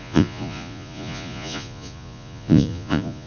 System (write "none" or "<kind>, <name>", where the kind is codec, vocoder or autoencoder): vocoder, Vocos